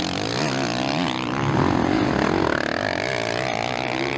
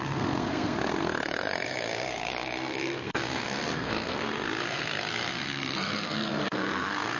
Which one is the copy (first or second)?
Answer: second